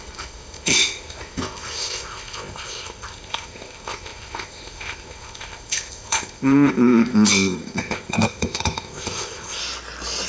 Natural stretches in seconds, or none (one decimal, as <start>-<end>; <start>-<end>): 9.6-10.3